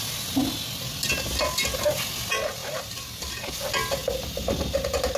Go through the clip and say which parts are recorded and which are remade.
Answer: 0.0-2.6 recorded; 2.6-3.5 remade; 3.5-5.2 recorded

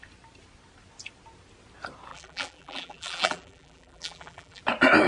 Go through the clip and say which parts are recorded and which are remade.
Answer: 0.0-2.1 recorded; 2.1-4.6 remade; 4.6-5.1 recorded

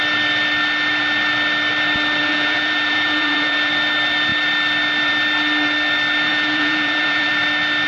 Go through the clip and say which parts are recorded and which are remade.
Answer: 0.0-2.2 recorded; 2.2-3.7 remade; 3.7-6.3 recorded; 6.3-7.3 remade; 7.3-7.9 recorded

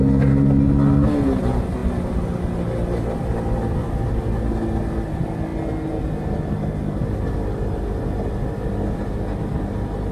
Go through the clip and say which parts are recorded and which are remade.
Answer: 0.0-10.1 recorded

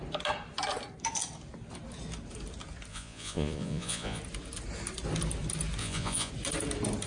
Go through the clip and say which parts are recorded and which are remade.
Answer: 0.0-2.9 recorded; 2.9-4.2 remade; 4.2-5.8 recorded; 5.8-6.3 remade; 6.3-7.1 recorded

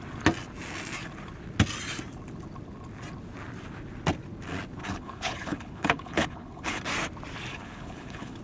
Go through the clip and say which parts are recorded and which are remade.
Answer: 0.0-4.8 recorded; 4.8-6.8 remade; 6.8-7.5 recorded; 7.5-8.4 remade